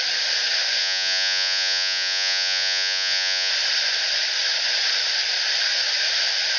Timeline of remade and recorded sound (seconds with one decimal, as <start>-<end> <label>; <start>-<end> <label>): 0.0-0.8 recorded; 0.8-3.5 remade; 3.5-6.6 recorded